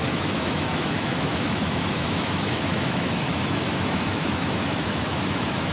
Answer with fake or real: fake